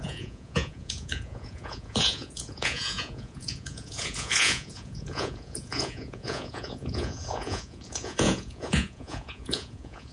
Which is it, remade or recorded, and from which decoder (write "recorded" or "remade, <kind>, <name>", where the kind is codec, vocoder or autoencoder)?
remade, vocoder, Vocos